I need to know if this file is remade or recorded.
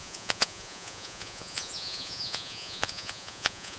remade